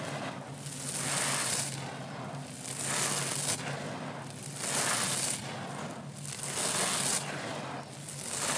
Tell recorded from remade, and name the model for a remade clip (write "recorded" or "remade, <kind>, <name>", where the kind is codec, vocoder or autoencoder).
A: recorded